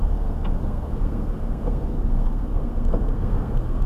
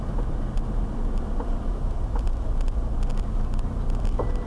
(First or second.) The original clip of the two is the second